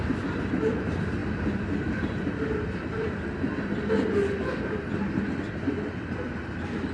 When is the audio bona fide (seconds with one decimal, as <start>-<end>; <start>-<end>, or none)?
0.0-6.9

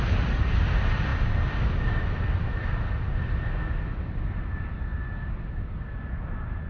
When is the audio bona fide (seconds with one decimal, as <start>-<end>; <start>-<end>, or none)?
0.0-6.7

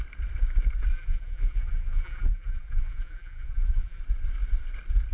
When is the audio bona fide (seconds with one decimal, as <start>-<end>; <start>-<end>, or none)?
0.0-0.9; 4.0-5.1

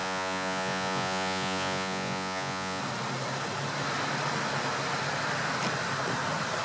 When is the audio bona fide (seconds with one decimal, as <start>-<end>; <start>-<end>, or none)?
2.8-6.6

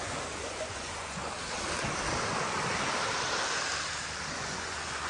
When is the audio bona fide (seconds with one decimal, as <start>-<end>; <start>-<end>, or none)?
1.2-4.3

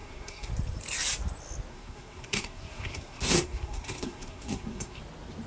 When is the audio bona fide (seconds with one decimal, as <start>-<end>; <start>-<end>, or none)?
0.5-1.7; 5.0-5.5

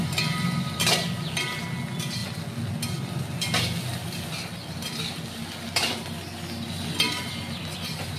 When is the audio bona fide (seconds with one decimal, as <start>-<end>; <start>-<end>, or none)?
0.0-8.2

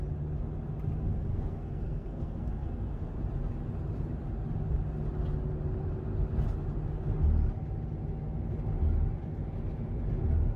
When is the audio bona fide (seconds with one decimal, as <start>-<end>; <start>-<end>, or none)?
0.0-1.3; 3.2-10.6